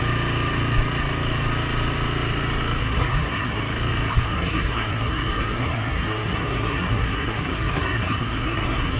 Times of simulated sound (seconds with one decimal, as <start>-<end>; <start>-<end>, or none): 2.8-3.6; 4.1-9.0

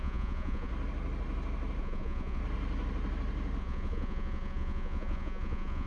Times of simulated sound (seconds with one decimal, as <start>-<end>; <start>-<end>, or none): 0.0-0.7; 1.8-2.4; 3.6-5.9

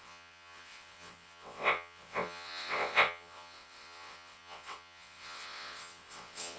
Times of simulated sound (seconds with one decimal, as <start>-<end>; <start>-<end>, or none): 0.0-6.6

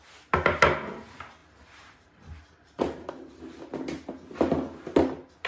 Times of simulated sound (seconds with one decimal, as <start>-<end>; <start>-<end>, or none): 1.4-3.1